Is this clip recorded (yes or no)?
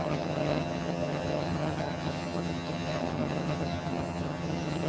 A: no